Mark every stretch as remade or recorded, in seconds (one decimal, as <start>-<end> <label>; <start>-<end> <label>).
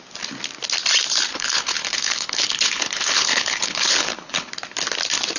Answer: 0.0-1.3 recorded; 1.3-4.5 remade; 4.5-5.4 recorded